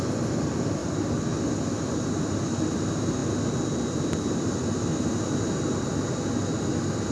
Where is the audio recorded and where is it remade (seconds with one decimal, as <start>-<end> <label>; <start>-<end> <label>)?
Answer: 0.0-7.1 recorded